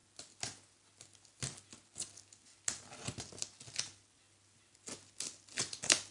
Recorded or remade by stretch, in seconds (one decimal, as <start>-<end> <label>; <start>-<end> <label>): 0.0-6.1 recorded